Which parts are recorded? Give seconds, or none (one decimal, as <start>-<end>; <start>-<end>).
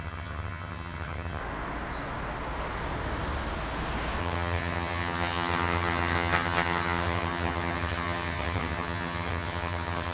1.4-4.2